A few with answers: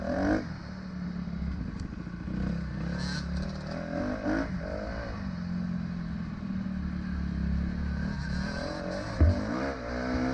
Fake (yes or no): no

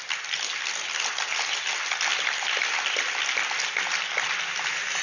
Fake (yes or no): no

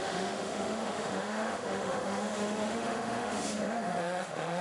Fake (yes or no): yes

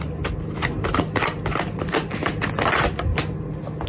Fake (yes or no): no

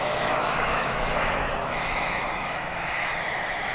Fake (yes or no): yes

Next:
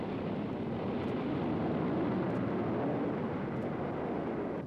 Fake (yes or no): no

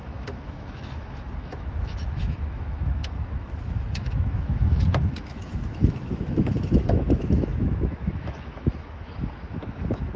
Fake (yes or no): yes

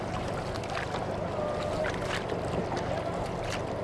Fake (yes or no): no